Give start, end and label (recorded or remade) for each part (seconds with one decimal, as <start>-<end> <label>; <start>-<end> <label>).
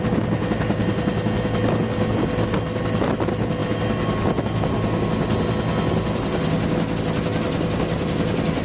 0.0-8.6 recorded